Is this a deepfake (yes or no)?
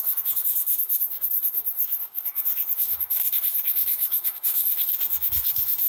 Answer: yes